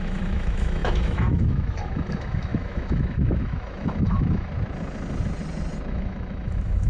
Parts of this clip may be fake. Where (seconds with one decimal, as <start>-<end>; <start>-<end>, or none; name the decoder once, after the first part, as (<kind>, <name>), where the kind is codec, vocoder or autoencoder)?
0.0-4.5 (autoencoder, DAC-VAE); 5.9-6.9

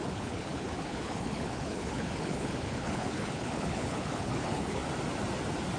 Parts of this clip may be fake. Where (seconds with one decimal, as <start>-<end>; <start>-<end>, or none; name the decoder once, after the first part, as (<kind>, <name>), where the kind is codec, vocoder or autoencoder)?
0.0-4.8 (codec, HILCodec)

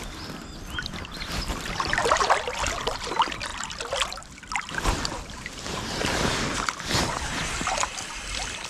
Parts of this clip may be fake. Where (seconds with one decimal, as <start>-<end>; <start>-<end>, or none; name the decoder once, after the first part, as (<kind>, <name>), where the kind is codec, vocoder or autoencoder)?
none